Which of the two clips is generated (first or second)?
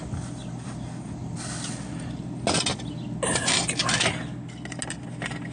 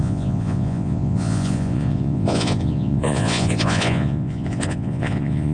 second